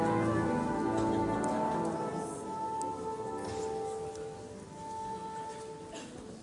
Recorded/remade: recorded